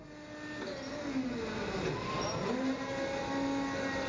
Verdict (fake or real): real